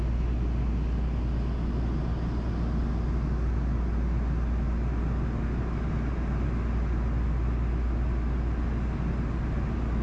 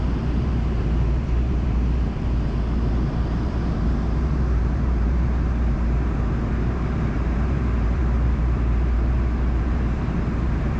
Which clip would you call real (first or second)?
first